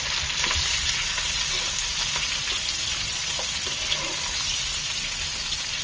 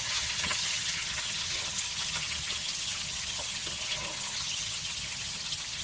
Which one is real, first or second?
first